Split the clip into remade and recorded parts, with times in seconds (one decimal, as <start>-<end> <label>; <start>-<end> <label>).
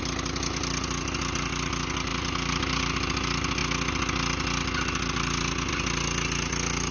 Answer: 0.0-2.1 recorded; 2.1-2.8 remade; 2.8-6.9 recorded